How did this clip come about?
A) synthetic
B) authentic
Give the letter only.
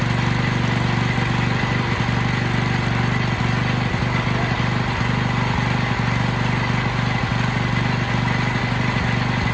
B